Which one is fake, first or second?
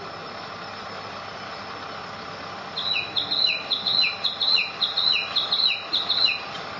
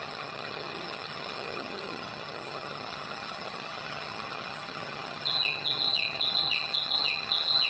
second